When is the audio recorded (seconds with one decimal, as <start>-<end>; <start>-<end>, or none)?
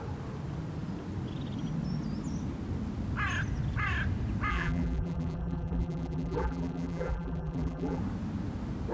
0.0-4.5; 8.0-8.9